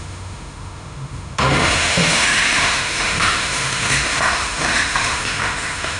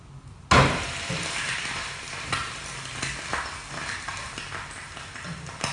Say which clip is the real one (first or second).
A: second